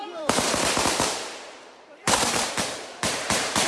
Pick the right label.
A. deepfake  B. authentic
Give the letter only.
A